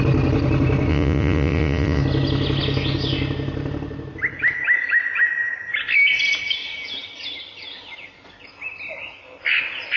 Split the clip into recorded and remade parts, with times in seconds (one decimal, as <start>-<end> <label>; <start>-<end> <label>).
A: 0.0-0.9 recorded; 0.9-2.0 remade; 2.0-10.0 recorded